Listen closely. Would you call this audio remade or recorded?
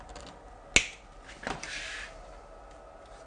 recorded